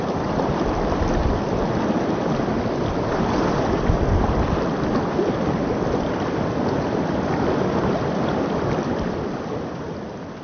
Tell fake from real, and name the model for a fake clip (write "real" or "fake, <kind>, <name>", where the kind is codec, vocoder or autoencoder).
real